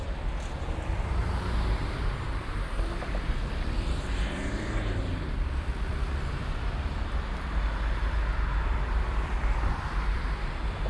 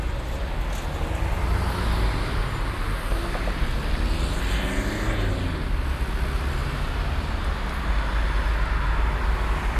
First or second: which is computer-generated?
first